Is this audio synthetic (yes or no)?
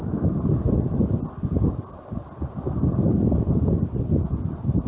no